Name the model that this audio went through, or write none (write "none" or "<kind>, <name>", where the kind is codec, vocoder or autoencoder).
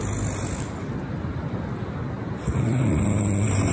none